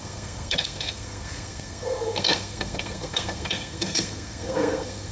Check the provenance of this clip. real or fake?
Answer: fake